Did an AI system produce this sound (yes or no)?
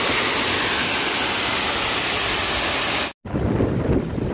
no